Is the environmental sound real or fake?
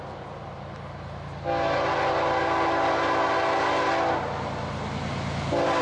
real